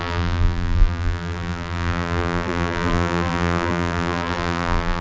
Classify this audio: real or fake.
fake